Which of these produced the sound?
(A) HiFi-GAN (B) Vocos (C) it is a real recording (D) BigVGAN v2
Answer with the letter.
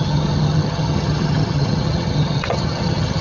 A